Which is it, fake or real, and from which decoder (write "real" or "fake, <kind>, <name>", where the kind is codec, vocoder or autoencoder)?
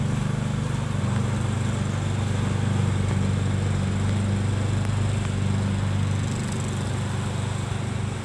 real